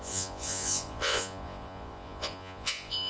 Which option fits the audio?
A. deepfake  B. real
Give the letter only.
A